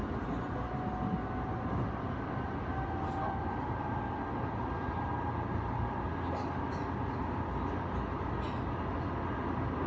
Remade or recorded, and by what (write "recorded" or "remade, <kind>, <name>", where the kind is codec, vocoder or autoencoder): recorded